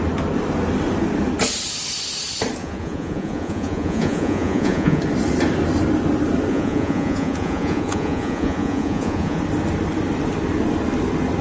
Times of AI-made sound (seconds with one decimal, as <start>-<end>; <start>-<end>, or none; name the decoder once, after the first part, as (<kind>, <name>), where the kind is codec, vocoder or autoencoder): 2.6-5.0 (vocoder, Vocos); 6.5-9.4